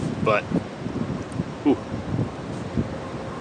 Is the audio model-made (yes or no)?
no